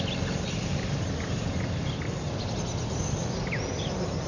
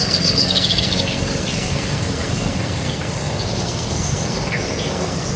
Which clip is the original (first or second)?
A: first